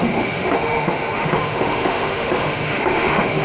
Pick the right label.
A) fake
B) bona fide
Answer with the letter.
A